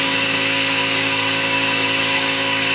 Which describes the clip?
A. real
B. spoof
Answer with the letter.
B